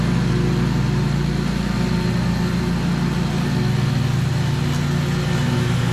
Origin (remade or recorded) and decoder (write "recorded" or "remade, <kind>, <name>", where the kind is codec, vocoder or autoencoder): recorded